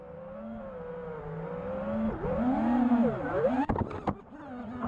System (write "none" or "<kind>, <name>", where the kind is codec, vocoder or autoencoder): none